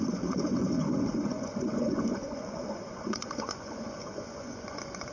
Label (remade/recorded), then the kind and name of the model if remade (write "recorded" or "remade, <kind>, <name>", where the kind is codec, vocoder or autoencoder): remade, vocoder, Vocos